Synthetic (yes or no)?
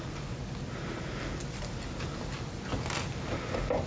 no